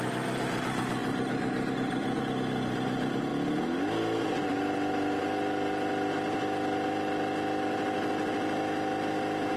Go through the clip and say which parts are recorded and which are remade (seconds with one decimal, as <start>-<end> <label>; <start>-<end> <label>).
0.0-1.0 recorded; 1.0-2.2 remade; 2.2-9.6 recorded